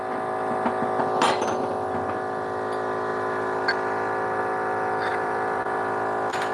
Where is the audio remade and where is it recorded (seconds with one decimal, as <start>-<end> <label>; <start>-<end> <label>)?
0.0-5.1 recorded; 5.1-5.6 remade; 5.6-6.5 recorded